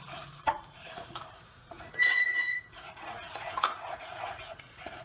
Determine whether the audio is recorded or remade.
remade